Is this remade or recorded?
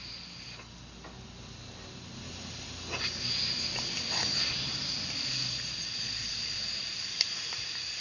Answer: recorded